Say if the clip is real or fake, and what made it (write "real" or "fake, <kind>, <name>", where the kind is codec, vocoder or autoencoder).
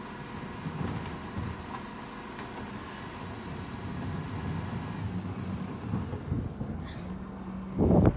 real